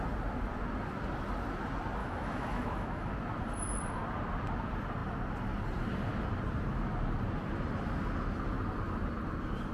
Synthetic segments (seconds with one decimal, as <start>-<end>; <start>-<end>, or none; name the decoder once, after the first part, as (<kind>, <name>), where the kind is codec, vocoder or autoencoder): 2.0-3.1 (autoencoder, DAC-VAE)